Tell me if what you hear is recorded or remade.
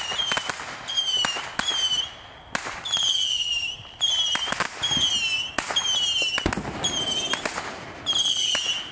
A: recorded